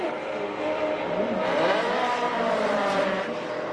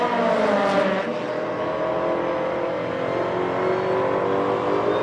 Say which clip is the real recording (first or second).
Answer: second